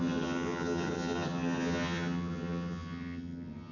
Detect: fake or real fake